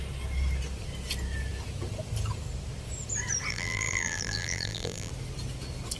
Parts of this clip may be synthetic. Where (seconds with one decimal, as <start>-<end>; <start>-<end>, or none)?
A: 3.5-5.1